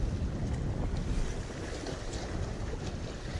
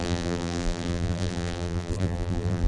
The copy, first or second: second